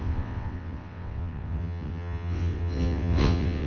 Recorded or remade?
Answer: remade